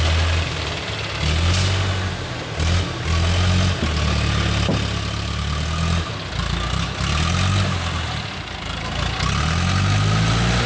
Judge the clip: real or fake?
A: real